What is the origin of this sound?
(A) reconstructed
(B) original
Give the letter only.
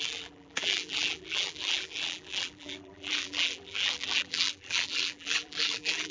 A